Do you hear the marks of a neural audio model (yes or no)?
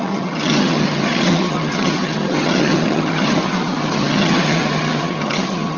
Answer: yes